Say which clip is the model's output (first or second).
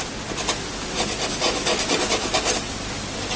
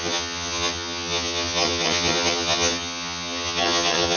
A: second